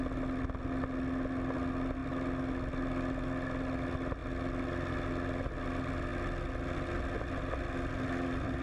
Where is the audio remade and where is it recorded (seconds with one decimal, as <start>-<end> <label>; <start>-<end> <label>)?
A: 0.0-8.6 recorded